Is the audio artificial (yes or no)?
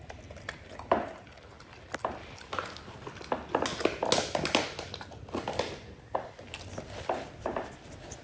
no